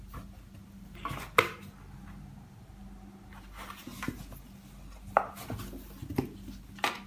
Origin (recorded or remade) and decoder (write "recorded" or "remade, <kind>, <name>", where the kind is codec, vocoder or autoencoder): recorded